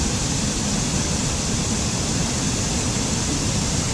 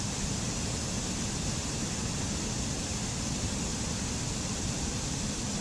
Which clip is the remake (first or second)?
first